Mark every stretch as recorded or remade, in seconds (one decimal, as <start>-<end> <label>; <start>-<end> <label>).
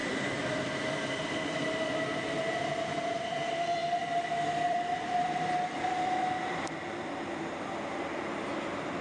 0.0-9.0 remade